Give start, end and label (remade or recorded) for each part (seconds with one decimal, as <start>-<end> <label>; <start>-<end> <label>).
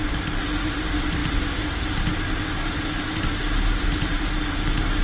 0.0-5.0 recorded